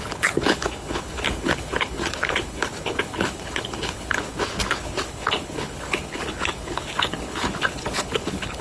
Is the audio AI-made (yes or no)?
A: yes